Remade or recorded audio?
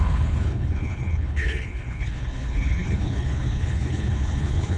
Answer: remade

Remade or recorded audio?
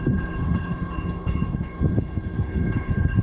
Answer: remade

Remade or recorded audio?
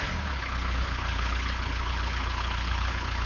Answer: remade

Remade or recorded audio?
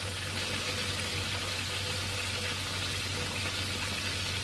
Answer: recorded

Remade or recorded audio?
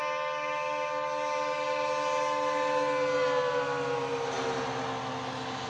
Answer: recorded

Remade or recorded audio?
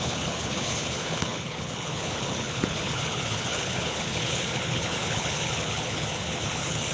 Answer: remade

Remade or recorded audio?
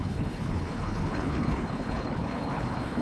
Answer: remade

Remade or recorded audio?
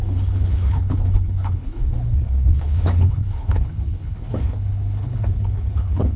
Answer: remade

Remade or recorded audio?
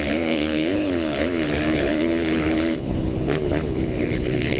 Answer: remade